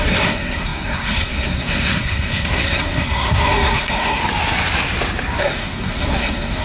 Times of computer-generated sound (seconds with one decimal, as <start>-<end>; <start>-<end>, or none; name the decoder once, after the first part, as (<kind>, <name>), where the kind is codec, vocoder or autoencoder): 0.0-4.2 (codec, SNAC); 5.4-6.6